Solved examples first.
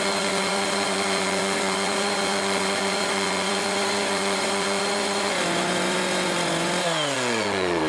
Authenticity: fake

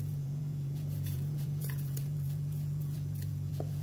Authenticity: fake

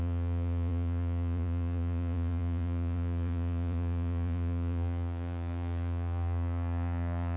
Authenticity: fake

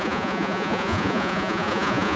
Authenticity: fake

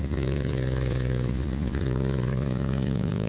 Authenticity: fake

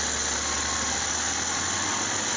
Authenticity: real